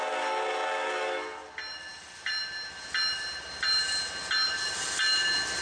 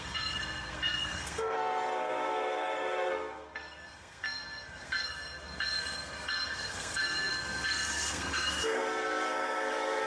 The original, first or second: first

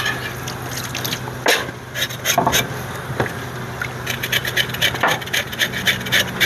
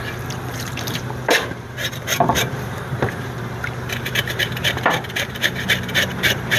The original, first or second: first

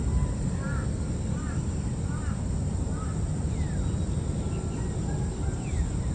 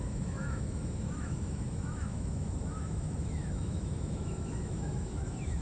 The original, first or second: first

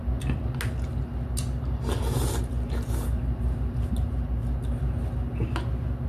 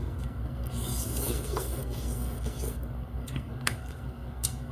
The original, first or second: first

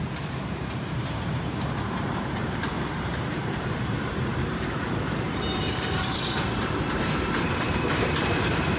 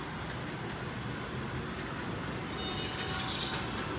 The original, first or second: second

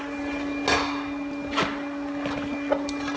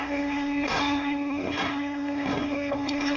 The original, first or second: first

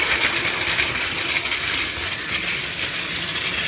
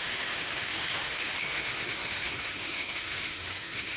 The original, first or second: first